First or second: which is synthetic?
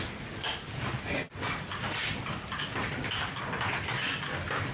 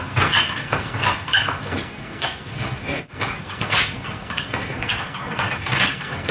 second